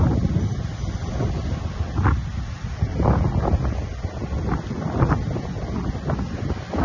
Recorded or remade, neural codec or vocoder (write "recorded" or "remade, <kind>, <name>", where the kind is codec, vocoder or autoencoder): recorded